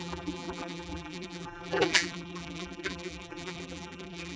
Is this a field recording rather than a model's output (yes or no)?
no